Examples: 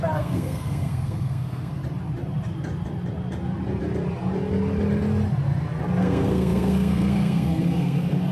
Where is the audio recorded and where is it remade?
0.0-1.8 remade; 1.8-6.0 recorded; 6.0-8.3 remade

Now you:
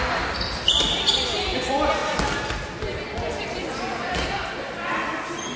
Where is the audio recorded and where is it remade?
0.0-5.6 recorded

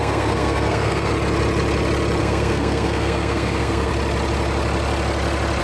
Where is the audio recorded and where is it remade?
0.0-1.1 remade; 1.1-2.2 recorded; 2.2-3.9 remade; 3.9-5.6 recorded

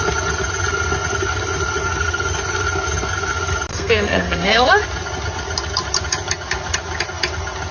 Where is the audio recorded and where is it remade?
0.0-3.7 recorded; 3.7-4.7 remade; 4.7-7.7 recorded

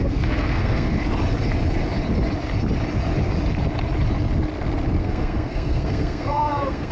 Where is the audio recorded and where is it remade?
0.0-0.9 remade; 0.9-5.0 recorded; 5.0-6.9 remade

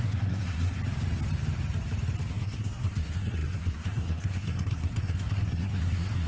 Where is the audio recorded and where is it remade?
0.0-0.8 remade; 0.8-2.3 recorded; 2.3-6.3 remade

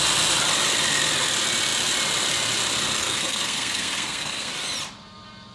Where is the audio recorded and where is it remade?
0.0-3.0 recorded; 3.0-4.5 remade; 4.5-5.5 recorded

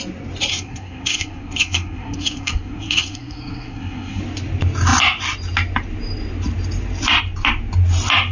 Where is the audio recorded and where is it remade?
0.0-0.5 recorded; 0.5-4.2 remade; 4.2-8.3 recorded